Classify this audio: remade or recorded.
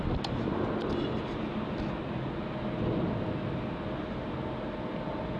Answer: recorded